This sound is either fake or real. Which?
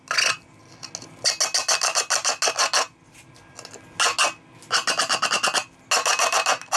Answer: real